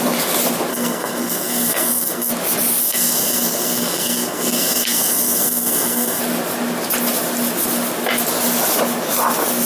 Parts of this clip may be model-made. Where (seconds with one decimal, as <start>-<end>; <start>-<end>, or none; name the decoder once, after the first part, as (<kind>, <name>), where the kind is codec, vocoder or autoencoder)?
0.7-2.3 (codec, SNAC); 2.8-6.2